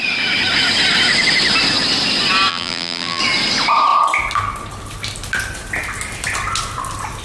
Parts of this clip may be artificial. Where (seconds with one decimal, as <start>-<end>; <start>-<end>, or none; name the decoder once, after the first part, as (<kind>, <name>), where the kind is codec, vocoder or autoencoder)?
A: 2.5-3.2 (vocoder, BigVGAN v2)